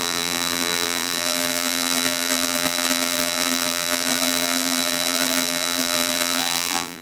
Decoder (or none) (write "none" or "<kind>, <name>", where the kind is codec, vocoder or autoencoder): vocoder, BigVGAN v2